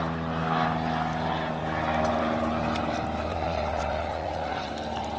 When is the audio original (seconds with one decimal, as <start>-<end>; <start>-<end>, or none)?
0.0-3.3; 4.7-5.2